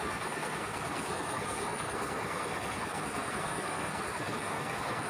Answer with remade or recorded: remade